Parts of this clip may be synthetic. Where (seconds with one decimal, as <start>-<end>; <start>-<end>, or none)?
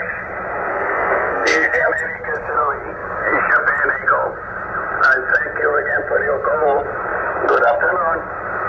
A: 0.7-1.9